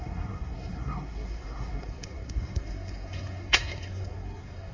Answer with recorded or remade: remade